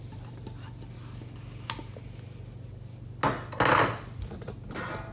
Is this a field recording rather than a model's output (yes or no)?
yes